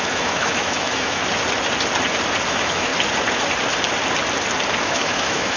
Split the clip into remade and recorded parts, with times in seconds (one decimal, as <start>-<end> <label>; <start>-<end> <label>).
0.0-1.2 remade; 1.2-2.5 recorded; 2.5-2.9 remade; 2.9-4.8 recorded; 4.8-5.6 remade